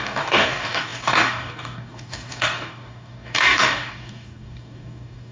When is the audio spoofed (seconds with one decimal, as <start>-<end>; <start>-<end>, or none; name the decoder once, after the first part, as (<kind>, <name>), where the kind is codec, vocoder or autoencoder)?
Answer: 0.0-5.3 (codec, DAC)